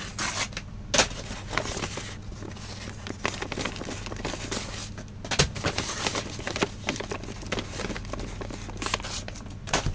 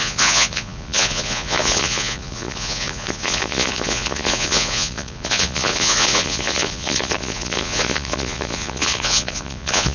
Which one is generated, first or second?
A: second